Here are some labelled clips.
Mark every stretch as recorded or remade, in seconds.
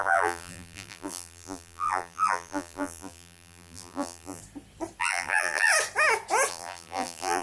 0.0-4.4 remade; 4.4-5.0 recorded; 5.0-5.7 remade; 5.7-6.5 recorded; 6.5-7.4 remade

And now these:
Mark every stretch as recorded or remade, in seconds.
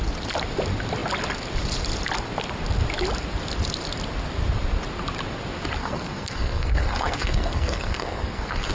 0.0-5.8 recorded; 5.8-8.7 remade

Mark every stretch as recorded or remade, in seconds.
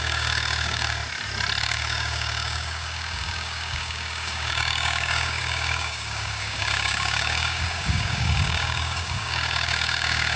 0.0-1.0 remade; 1.0-1.6 recorded; 1.6-10.4 remade